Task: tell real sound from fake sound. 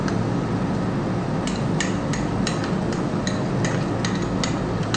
real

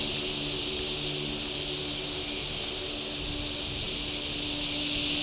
real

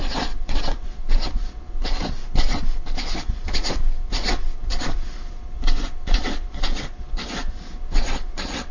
fake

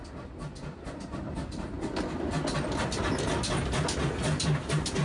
real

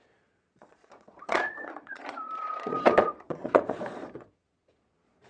fake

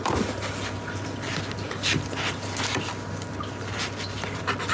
real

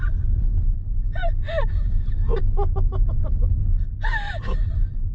real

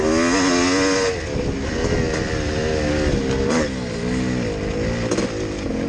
real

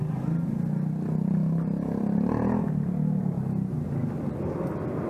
real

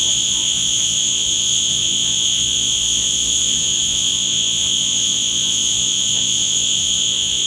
fake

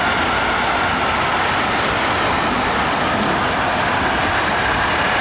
real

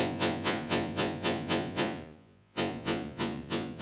fake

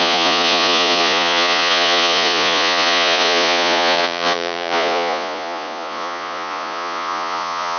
fake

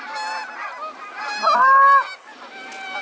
real